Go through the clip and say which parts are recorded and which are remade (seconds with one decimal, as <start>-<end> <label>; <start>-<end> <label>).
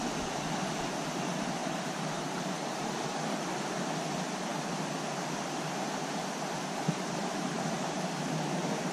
0.0-1.6 recorded; 1.6-3.4 remade; 3.4-7.2 recorded; 7.2-8.2 remade; 8.2-8.9 recorded